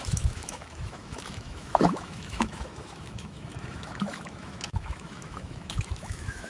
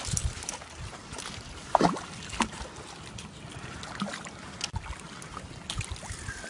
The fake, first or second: first